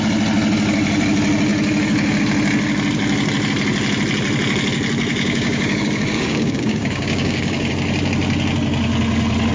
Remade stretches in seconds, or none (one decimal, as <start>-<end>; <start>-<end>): 5.1-7.7